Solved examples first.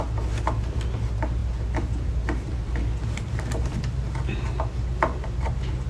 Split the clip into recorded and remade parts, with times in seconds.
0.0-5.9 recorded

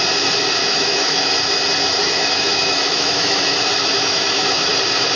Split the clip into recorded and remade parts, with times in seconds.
0.0-0.6 recorded; 0.6-1.3 remade; 1.3-2.0 recorded; 2.0-4.7 remade; 4.7-5.2 recorded

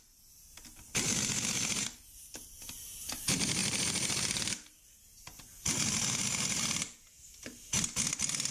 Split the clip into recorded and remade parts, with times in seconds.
0.0-8.5 recorded

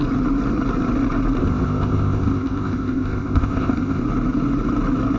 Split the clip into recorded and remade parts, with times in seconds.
0.0-1.4 recorded; 1.4-4.0 remade; 4.0-5.2 recorded

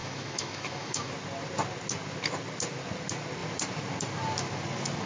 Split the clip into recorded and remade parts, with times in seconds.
0.0-1.1 remade; 1.1-5.1 recorded

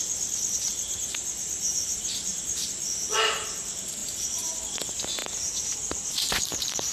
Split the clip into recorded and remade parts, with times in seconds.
0.0-0.7 recorded; 0.7-2.7 remade; 2.7-4.0 recorded; 4.0-4.6 remade; 4.6-5.2 recorded; 5.2-6.9 remade